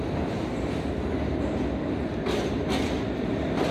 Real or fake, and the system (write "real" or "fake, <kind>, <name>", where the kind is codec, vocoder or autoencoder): real